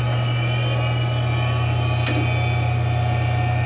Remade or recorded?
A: recorded